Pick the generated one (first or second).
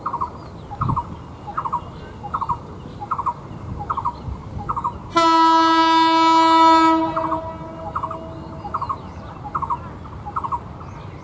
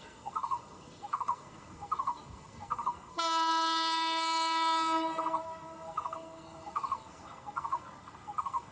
second